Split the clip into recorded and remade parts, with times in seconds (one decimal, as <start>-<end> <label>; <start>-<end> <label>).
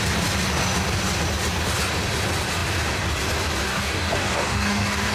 0.0-3.7 recorded; 3.7-5.1 remade